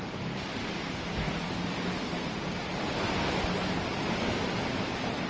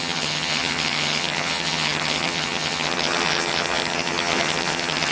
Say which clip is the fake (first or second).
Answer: second